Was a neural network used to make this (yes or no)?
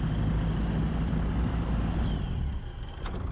no